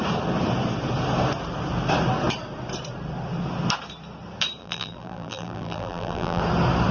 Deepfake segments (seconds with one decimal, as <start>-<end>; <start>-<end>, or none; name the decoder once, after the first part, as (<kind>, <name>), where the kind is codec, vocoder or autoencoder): 4.6-6.4 (vocoder, BigVGAN v2)